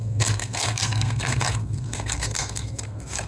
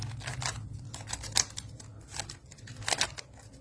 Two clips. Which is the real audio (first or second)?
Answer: second